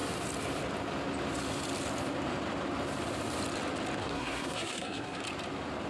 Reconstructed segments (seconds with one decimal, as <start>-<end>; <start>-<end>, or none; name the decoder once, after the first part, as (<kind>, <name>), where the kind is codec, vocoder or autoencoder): 4.0-5.2 (codec, SNAC)